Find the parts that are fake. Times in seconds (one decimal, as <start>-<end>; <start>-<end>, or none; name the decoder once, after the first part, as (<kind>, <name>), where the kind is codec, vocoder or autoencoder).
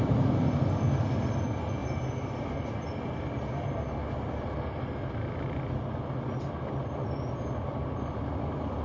none